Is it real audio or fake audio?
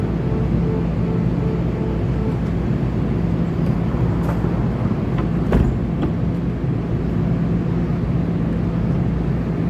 real